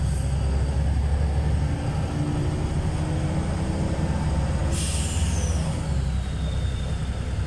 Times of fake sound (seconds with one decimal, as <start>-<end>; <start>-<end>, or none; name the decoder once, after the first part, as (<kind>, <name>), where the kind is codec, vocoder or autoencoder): none

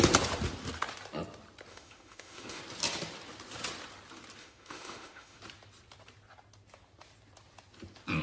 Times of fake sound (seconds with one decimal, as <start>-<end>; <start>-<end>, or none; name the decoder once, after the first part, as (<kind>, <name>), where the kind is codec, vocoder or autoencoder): 1.7-2.6 (autoencoder, DAC-VAE); 4.4-5.4

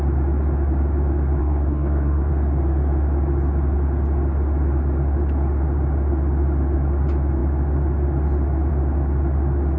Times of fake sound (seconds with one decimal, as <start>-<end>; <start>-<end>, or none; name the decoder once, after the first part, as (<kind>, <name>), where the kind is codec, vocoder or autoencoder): 1.4-2.3 (codec, SNAC)

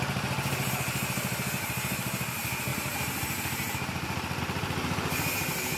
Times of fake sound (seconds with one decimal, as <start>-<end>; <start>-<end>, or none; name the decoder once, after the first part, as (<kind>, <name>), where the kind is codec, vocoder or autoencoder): 2.7-4.4 (vocoder, BigVGAN v2)

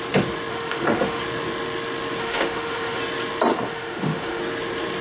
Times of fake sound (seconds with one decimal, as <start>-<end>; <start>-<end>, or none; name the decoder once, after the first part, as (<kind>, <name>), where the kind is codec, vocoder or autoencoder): 0.5-1.2 (autoencoder, DAC-VAE); 2.2-3.0; 3.5-4.4